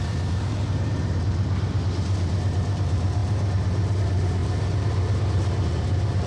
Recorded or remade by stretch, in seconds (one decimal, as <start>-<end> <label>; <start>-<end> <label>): 0.0-6.3 remade